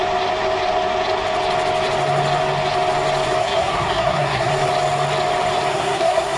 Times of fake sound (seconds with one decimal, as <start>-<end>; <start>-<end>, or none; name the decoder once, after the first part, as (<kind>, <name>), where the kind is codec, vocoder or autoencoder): 3.4-4.5 (codec, SNAC); 5.7-6.4